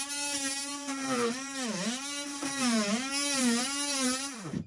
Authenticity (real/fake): fake